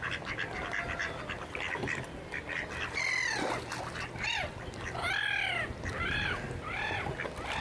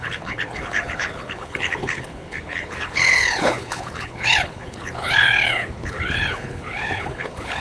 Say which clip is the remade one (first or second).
second